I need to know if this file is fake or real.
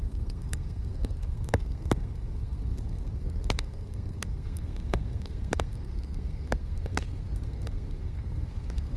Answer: fake